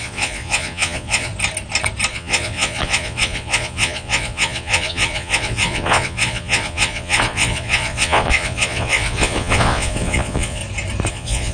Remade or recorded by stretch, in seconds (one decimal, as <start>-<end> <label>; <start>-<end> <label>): 0.0-1.3 remade; 1.3-2.1 recorded; 2.1-10.6 remade; 10.6-11.1 recorded; 11.1-11.5 remade